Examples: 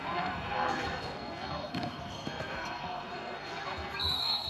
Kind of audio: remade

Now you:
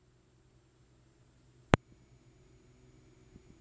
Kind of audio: recorded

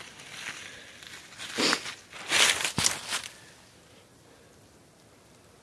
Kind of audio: recorded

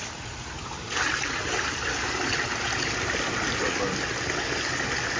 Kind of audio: recorded